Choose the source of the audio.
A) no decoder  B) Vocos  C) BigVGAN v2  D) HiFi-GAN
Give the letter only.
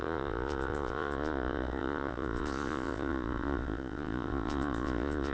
B